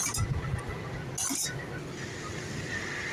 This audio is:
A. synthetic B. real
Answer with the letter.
B